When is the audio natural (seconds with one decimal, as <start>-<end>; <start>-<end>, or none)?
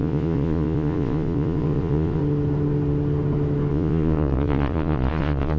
2.2-3.7